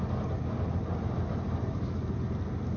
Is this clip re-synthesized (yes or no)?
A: no